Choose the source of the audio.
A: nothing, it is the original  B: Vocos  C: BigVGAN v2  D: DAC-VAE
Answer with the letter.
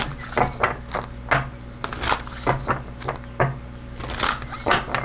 A